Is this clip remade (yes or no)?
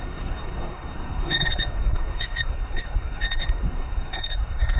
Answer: yes